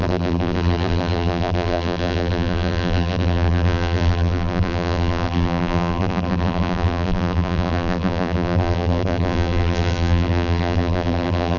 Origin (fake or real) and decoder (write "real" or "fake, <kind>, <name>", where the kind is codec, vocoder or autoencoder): fake, vocoder, BigVGAN v2